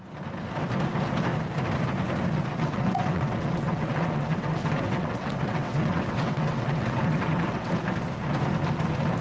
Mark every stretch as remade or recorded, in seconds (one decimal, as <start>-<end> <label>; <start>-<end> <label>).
0.0-2.5 recorded; 2.5-7.7 remade; 7.7-9.2 recorded